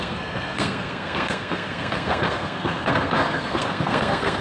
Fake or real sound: fake